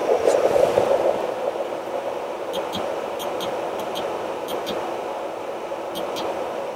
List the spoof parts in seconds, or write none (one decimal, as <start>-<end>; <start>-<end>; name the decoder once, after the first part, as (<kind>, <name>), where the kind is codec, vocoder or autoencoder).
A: 0.0-3.8 (vocoder, BigVGAN v2)